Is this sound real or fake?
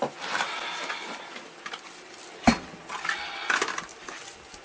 real